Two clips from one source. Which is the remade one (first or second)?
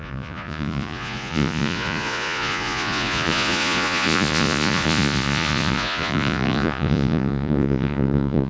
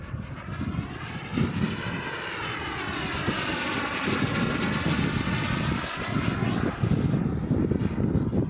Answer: first